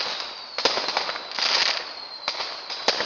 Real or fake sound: real